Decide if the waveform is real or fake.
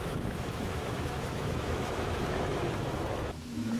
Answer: fake